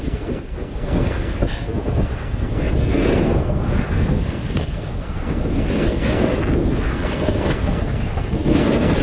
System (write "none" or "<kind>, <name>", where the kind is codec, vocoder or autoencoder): codec, SNAC